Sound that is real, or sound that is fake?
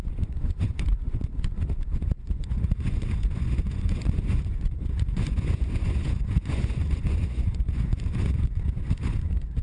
fake